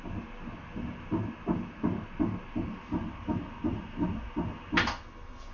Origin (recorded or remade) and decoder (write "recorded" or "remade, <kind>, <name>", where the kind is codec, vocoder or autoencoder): recorded